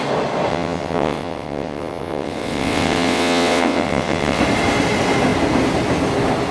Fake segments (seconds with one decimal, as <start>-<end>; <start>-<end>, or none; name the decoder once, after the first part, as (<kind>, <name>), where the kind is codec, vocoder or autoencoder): 0.5-4.4 (vocoder, WaveNeXt)